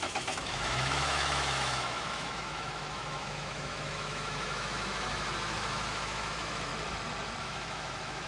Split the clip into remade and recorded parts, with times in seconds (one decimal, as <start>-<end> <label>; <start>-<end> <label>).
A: 0.0-6.7 remade; 6.7-7.4 recorded; 7.4-8.3 remade